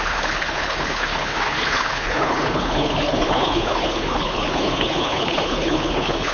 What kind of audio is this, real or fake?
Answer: fake